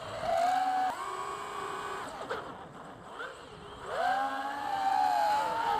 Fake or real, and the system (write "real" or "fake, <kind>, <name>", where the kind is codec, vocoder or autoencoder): real